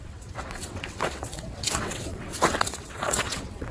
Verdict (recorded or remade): remade